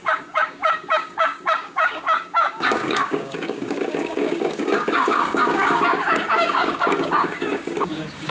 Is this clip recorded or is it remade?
remade